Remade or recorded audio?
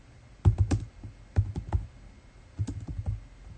recorded